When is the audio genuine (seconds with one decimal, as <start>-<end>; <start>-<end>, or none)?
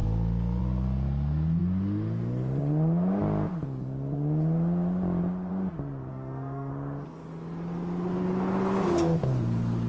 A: 0.0-6.1; 6.7-9.9